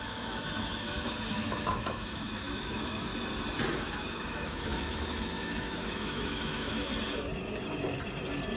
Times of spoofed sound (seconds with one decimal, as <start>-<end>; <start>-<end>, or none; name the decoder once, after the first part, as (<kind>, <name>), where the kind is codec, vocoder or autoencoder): 0.0-3.1 (autoencoder, DAC-VAE); 3.7-6.9